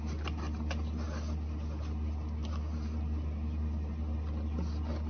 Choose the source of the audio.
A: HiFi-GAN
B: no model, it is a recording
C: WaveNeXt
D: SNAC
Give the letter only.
B